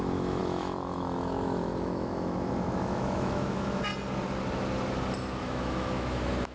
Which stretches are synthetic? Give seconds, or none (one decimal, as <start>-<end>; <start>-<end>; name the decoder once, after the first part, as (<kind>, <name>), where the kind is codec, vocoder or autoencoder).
0.0-3.9 (autoencoder, DAC-VAE); 5.4-6.5

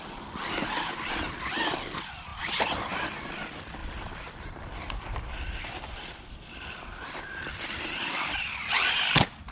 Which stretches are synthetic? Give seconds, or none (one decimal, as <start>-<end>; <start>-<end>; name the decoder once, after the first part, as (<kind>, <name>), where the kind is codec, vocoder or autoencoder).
2.3-2.9 (vocoder, BigVGAN v2); 3.8-8.9

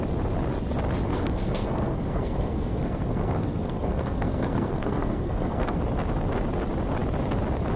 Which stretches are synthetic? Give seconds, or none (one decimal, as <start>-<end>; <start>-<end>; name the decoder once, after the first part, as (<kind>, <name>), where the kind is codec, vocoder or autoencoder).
1.1-5.8 (codec, SNAC)